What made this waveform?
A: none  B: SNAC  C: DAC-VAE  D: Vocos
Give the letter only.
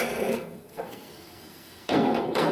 B